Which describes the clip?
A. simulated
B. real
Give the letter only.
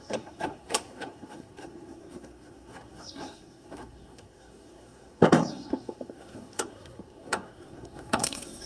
A